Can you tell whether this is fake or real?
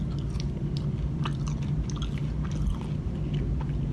real